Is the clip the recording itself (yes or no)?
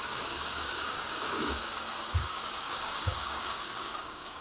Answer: no